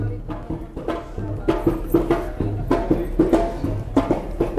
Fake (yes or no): no